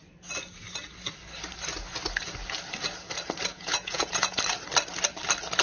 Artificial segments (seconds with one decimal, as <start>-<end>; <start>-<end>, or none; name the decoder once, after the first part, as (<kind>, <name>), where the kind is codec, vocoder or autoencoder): 3.5-4.4 (vocoder, Vocos)